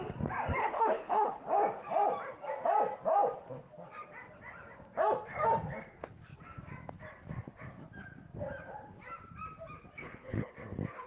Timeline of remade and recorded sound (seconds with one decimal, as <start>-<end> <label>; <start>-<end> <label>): 0.0-0.6 recorded; 0.6-1.4 remade; 1.4-10.0 recorded; 10.0-10.5 remade; 10.5-11.1 recorded